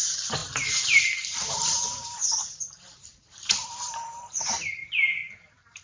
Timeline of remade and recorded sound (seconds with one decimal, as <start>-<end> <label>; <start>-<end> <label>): 0.0-5.8 remade